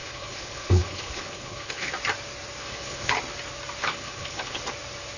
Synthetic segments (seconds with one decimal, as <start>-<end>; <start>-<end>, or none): 0.0-1.9; 2.6-3.1; 3.8-4.6